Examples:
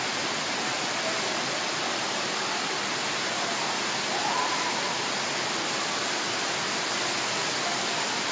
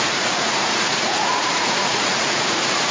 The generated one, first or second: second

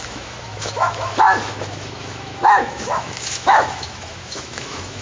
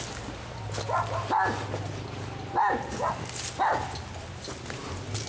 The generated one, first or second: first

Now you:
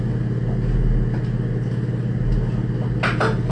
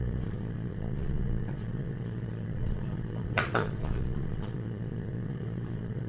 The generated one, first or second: second